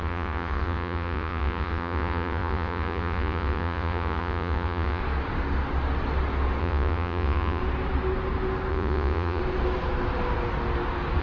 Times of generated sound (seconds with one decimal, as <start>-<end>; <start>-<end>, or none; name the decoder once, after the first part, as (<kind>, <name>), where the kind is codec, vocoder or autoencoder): 0.0-5.0 (vocoder, Vocos); 6.6-7.6; 8.7-9.4